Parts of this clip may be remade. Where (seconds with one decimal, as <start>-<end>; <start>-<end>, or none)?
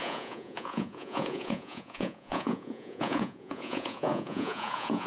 0.0-5.1